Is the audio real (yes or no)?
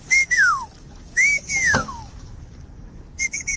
no